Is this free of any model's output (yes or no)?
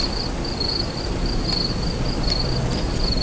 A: yes